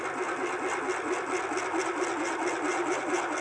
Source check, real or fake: real